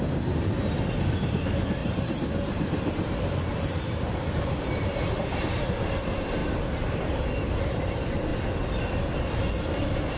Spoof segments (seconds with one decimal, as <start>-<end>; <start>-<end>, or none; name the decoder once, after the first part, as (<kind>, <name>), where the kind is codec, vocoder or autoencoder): 0.0-8.3 (vocoder, BigVGAN v2)